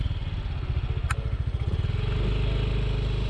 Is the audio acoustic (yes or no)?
yes